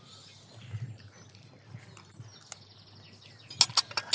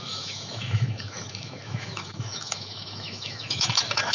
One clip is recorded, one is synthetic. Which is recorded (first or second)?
first